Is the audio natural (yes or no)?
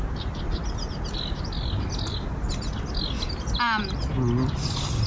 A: yes